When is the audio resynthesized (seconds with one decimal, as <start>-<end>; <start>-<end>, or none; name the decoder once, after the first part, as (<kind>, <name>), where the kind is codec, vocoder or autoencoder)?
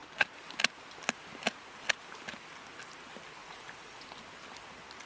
3.4-4.0 (vocoder, Vocos)